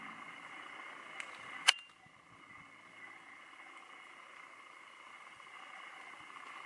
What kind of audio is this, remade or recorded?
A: recorded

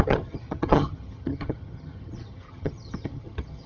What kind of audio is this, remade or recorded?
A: remade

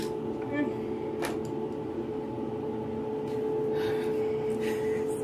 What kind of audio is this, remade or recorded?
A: recorded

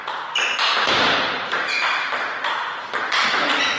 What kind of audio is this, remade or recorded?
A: recorded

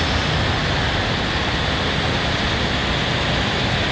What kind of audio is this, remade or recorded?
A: recorded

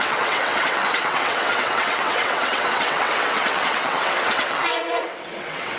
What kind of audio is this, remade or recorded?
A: remade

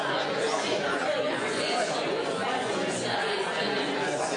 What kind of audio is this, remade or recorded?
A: remade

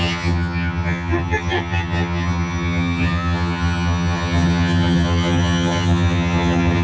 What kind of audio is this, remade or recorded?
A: remade